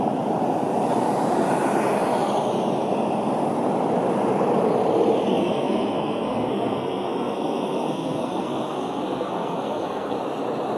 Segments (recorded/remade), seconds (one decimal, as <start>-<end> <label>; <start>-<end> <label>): 0.0-5.3 recorded; 5.3-10.2 remade; 10.2-10.8 recorded